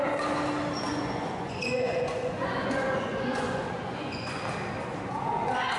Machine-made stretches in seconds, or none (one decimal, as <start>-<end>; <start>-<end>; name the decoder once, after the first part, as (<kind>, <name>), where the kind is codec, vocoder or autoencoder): 0.9-4.4 (vocoder, Vocos)